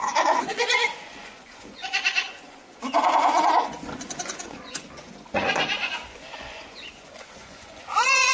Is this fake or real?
fake